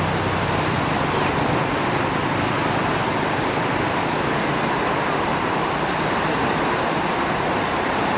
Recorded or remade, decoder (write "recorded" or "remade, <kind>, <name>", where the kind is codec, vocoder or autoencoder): recorded